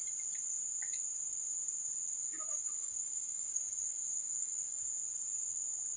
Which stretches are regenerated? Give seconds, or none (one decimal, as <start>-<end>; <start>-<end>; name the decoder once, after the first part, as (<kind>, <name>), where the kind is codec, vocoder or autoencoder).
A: 2.2-4.8 (codec, DAC)